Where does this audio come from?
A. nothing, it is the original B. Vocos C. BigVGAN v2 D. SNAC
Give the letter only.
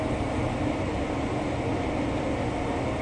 A